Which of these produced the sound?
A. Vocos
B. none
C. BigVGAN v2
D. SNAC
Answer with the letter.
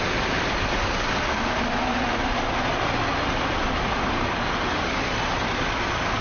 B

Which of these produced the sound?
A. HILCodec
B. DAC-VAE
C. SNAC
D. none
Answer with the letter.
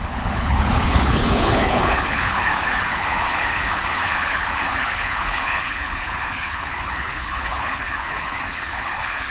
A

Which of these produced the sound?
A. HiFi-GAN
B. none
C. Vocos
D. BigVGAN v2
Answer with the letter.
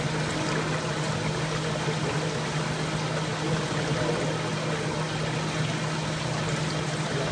B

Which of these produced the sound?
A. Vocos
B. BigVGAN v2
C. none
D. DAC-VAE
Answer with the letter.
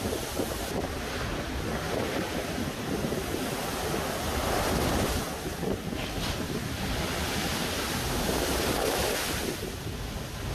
C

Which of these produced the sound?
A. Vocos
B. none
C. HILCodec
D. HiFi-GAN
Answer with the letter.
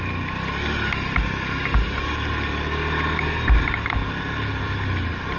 B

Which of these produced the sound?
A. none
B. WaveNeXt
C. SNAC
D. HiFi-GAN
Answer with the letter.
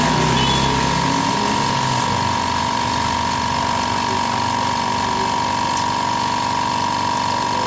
A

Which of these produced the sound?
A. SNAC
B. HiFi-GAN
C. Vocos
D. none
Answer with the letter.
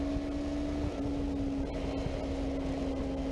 D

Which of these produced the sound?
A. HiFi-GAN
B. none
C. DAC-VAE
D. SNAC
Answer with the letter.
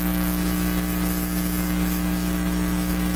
C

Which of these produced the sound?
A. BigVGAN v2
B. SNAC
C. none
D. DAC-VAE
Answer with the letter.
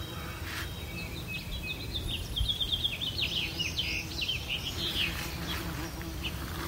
C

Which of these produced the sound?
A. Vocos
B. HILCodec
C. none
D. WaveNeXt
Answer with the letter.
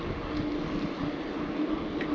C